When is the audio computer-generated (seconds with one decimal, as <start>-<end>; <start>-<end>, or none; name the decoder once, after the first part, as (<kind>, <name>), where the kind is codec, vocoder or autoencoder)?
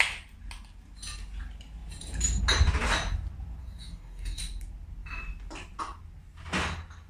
3.6-4.4 (codec, DAC)